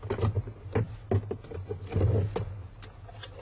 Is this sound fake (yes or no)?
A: no